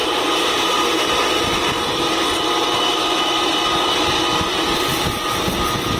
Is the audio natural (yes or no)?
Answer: yes